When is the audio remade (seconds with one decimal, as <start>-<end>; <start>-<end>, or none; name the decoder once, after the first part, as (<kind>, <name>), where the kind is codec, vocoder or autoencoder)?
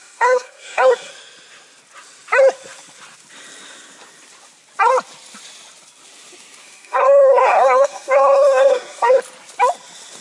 0.0-1.1 (codec, SNAC); 6.6-9.2